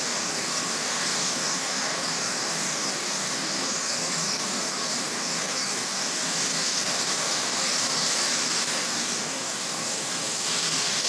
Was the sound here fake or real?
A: fake